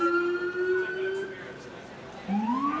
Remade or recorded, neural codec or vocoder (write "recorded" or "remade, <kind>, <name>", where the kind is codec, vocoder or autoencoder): recorded